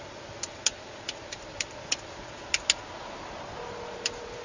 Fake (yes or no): no